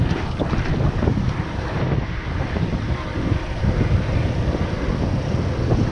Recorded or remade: recorded